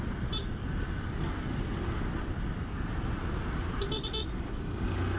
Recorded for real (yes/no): yes